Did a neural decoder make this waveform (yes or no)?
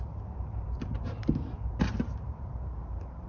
yes